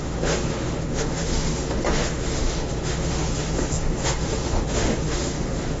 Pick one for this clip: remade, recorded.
remade